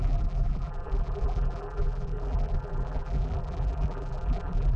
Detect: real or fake fake